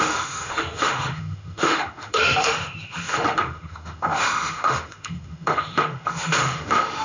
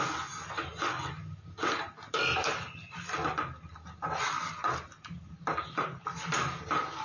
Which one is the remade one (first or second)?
first